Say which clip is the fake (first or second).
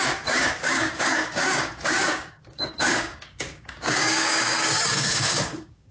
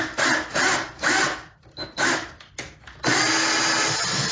first